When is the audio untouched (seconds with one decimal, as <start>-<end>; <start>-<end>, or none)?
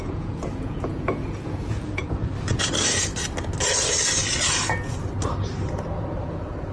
2.3-6.3